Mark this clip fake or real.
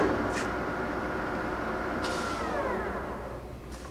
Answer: real